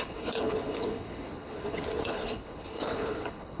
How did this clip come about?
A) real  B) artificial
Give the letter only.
B